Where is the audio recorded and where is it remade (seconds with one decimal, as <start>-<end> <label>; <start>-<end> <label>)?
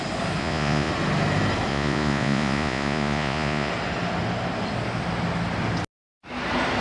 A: 0.0-0.4 recorded; 0.4-0.9 remade; 0.9-1.7 recorded; 1.7-3.7 remade; 3.7-6.8 recorded